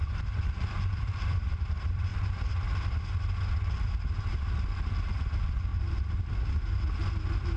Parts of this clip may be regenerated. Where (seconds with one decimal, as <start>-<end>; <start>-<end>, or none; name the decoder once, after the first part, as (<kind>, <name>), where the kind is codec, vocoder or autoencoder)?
0.0-2.1 (vocoder, BigVGAN v2); 5.3-5.7; 7.1-7.6